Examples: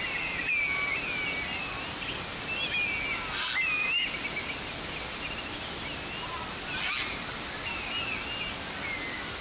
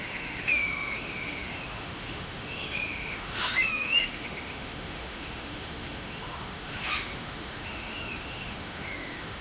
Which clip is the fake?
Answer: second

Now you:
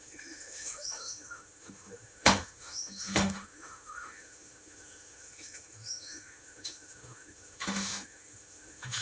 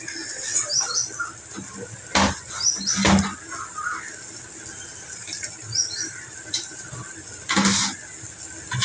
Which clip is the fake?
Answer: first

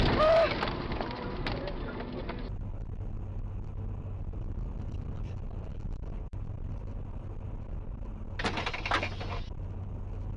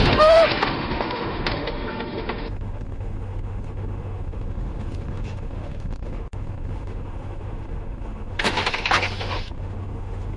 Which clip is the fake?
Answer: second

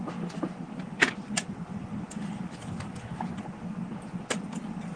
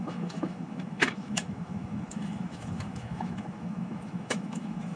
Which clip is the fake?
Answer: second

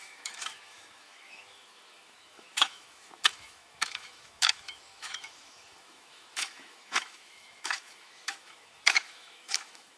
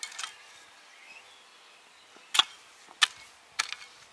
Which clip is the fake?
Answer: first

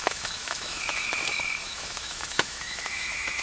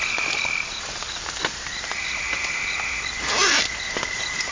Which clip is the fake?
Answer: first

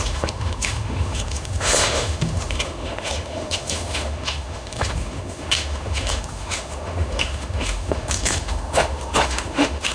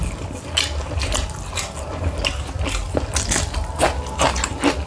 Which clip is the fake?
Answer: first